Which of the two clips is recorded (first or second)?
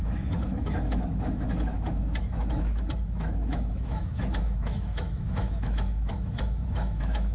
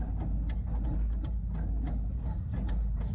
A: second